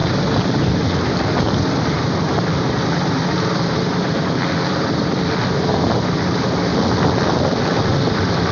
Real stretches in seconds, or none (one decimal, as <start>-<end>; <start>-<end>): 6.7-7.6